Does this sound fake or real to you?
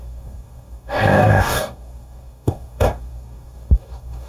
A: fake